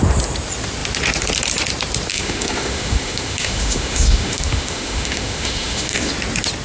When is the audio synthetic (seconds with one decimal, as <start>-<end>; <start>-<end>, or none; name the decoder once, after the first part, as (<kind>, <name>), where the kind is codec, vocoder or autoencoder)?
2.1-6.1 (autoencoder, DAC-VAE)